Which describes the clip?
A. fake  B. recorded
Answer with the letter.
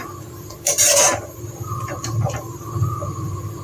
A